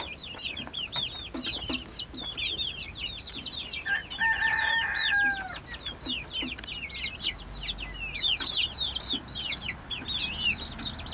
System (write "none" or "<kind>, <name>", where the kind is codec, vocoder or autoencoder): none